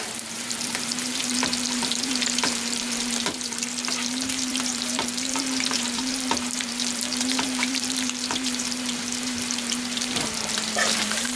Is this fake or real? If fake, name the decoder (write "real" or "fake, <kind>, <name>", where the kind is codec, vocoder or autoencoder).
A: fake, vocoder, BigVGAN v2